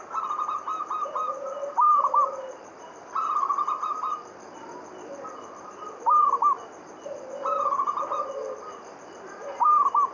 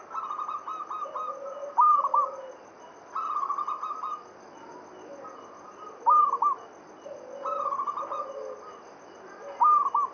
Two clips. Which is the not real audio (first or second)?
first